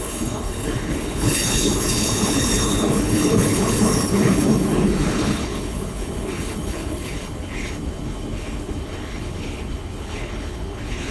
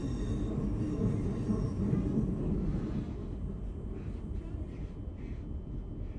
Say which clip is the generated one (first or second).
first